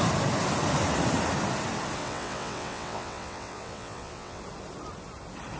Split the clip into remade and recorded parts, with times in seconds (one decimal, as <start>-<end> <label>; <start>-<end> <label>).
0.0-2.0 recorded; 2.0-4.4 remade; 4.4-5.6 recorded